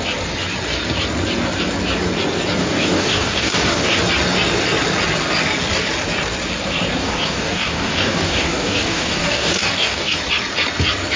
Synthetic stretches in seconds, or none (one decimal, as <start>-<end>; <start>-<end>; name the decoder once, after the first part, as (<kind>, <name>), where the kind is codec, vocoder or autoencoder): 2.6-4.0 (codec, DAC); 7.0-10.2